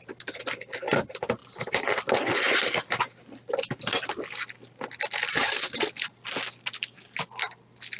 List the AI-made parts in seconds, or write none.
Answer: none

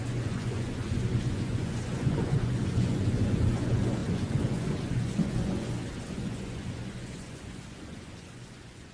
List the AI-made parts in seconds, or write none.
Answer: 0.0-8.9 (vocoder, Vocos)

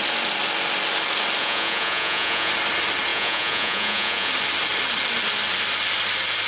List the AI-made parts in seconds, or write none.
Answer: 1.4-2.5 (vocoder, Vocos); 3.1-4.3

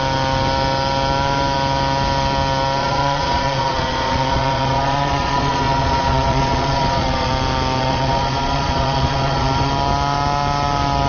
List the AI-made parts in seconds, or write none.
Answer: 2.8-7.3 (vocoder, Vocos); 7.8-9.7

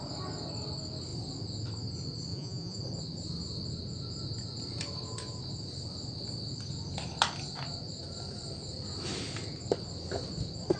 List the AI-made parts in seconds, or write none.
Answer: 2.3-2.8 (vocoder, Vocos)

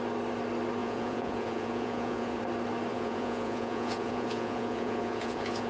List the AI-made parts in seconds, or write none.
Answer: 0.8-2.4 (vocoder, Vocos); 2.9-5.7